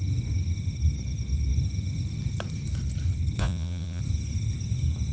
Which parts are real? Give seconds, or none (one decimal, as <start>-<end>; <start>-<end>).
0.0-3.4; 4.0-5.1